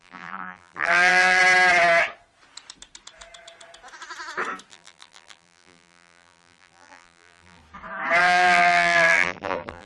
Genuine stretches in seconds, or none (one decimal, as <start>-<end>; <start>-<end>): 1.4-4.7; 7.6-8.2

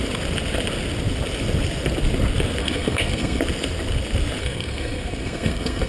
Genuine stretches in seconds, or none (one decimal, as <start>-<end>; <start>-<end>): 0.0-2.6; 3.4-4.4

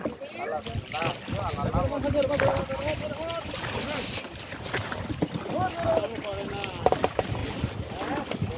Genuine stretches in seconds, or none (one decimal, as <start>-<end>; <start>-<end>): 0.0-8.6

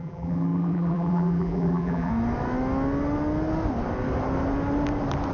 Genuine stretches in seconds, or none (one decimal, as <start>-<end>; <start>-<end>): 2.1-5.3

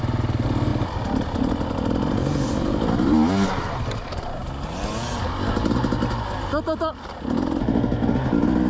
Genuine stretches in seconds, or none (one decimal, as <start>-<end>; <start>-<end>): 0.0-8.7

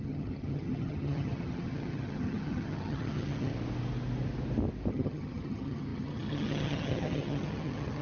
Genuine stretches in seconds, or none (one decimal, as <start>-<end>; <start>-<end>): 3.5-4.9

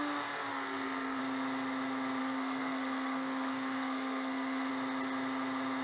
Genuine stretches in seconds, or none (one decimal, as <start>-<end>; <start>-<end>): 0.0-0.5; 1.2-2.2; 4.7-5.8

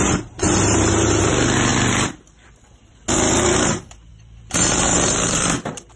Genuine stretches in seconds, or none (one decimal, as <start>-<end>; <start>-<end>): 0.0-6.0